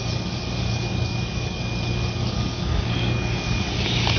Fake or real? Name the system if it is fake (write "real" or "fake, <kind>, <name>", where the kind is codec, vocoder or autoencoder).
fake, codec, DAC